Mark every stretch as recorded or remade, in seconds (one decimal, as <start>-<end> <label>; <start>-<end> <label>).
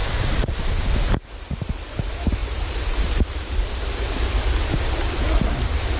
0.0-0.7 remade; 0.7-2.4 recorded; 2.4-3.8 remade; 3.8-6.0 recorded